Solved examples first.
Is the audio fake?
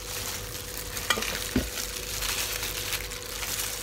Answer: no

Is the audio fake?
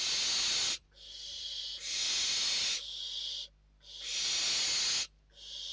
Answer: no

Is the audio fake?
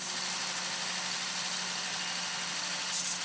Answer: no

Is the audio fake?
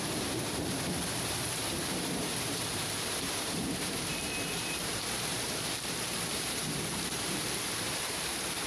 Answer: yes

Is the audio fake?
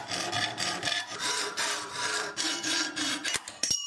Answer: yes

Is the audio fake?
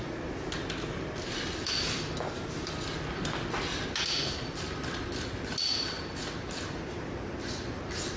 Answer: yes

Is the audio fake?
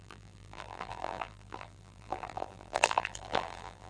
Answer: yes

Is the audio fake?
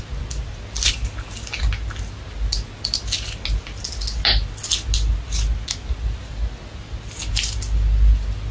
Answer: no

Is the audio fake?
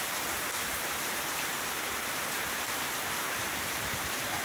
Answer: yes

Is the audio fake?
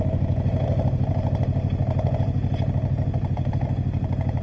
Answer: yes